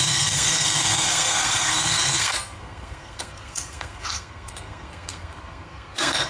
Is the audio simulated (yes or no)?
yes